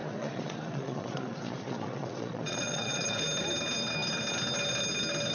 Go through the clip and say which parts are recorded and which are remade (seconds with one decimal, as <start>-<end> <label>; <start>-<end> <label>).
0.0-3.2 remade; 3.2-5.3 recorded